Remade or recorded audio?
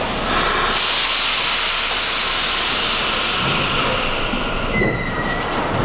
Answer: recorded